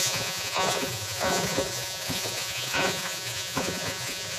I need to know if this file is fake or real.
fake